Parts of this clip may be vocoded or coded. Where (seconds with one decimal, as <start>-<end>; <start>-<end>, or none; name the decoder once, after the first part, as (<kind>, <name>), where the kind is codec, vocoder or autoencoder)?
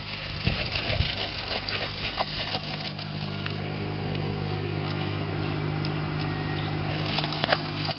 0.0-5.3 (codec, SNAC); 6.9-8.0